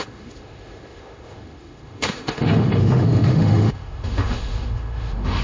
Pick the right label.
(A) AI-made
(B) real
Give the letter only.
A